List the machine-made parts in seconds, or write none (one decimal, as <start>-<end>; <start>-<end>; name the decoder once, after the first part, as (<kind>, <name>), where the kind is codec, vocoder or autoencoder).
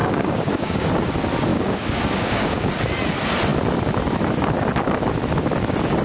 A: 0.0-0.9 (codec, DAC); 1.5-2.7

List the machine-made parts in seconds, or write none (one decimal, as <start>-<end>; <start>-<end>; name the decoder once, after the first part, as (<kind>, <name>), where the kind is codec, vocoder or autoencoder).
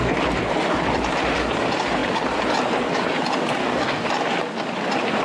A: 3.6-4.1 (codec, DAC)